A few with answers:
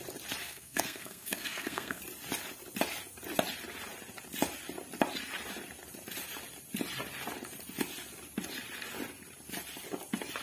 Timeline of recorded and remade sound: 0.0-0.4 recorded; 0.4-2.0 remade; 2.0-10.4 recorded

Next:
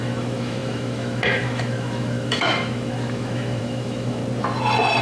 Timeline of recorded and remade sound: 0.0-4.2 remade; 4.2-5.0 recorded

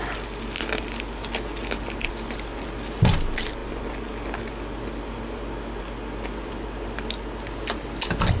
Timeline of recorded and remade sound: 0.0-8.4 recorded

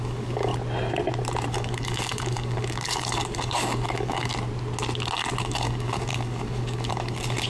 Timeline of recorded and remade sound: 0.0-0.5 remade; 0.5-1.5 recorded; 1.5-4.3 remade; 4.3-5.4 recorded; 5.4-7.5 remade